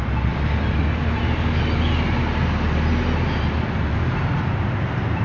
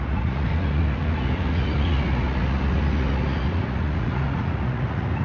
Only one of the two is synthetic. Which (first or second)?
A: second